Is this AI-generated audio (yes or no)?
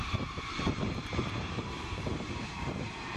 yes